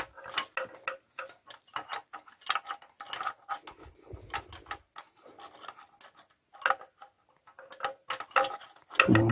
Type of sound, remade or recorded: recorded